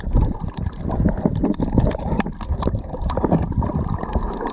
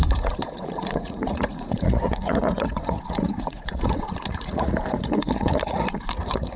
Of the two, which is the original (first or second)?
first